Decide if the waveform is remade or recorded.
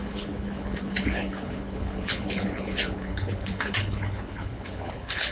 remade